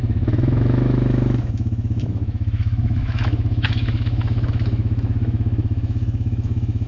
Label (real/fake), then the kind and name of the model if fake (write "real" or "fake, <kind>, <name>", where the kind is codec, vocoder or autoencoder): fake, autoencoder, DAC-VAE